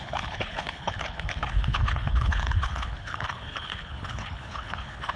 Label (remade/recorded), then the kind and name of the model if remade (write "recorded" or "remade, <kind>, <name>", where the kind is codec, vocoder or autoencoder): remade, codec, HILCodec